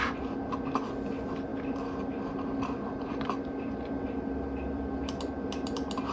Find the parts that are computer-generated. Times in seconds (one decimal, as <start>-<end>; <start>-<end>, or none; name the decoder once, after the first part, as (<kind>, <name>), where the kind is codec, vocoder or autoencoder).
1.5-5.2 (vocoder, BigVGAN v2)